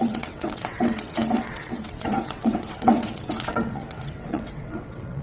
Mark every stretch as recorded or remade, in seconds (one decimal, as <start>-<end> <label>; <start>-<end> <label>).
0.0-5.2 remade